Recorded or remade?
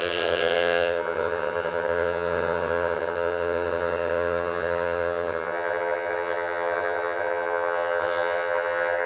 remade